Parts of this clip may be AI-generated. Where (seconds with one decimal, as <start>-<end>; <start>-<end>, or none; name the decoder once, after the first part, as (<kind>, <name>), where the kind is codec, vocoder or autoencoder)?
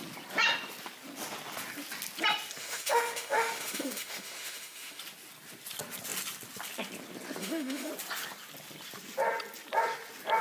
2.6-5.0 (autoencoder, DAC-VAE); 7.4-7.9